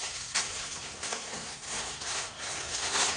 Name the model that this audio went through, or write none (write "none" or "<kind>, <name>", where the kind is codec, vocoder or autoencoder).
codec, SNAC